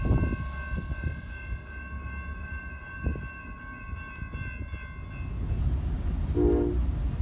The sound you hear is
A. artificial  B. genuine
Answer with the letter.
B